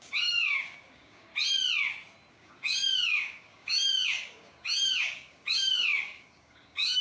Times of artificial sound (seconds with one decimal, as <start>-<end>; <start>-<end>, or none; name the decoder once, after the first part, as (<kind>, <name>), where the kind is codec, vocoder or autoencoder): 0.0-1.3 (codec, DAC); 2.3-7.0